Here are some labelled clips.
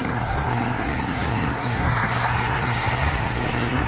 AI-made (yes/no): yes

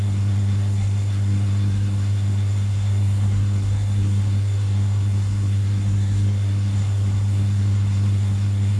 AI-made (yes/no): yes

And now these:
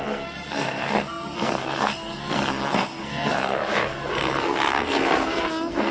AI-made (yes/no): yes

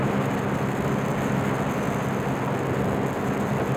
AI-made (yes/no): no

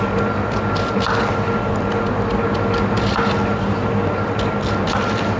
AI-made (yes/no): no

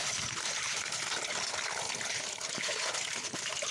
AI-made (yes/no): no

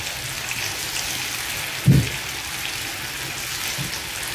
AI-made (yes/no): no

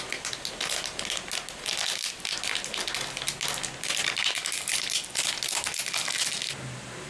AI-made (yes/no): no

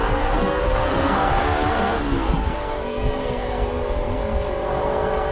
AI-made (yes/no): yes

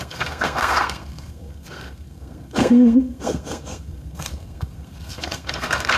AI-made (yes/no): yes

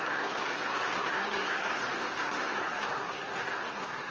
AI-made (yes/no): yes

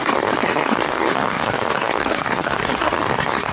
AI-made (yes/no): yes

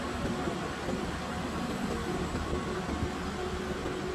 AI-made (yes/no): no